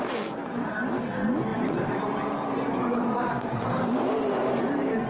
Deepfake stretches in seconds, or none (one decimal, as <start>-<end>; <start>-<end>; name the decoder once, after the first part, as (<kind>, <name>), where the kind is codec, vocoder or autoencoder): 0.4-1.1 (vocoder, BigVGAN v2); 1.5-4.6